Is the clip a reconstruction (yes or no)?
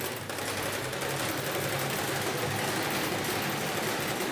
no